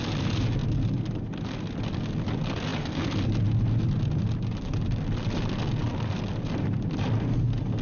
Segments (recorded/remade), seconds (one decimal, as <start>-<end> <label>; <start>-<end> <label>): 0.0-7.8 recorded